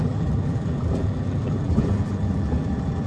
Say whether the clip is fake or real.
fake